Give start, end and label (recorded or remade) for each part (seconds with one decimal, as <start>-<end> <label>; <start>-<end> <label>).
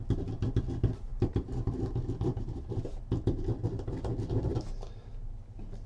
0.0-1.1 recorded; 1.1-3.0 remade; 3.0-5.9 recorded